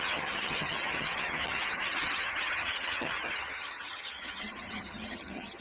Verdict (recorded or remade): remade